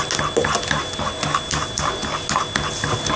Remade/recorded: recorded